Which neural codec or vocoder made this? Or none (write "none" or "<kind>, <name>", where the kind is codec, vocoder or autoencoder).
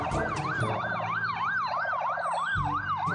none